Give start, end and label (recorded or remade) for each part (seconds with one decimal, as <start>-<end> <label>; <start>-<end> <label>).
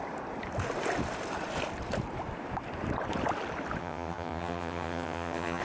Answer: 0.0-3.8 recorded; 3.8-5.6 remade